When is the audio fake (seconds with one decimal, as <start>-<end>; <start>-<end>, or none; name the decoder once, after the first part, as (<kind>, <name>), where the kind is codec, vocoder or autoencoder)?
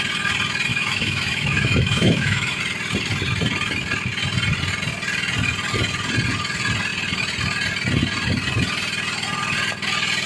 0.7-2.6 (autoencoder, DAC-VAE)